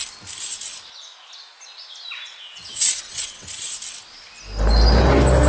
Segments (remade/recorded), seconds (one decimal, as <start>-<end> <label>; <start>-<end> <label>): 0.0-2.3 recorded; 2.3-3.7 remade; 3.7-5.5 recorded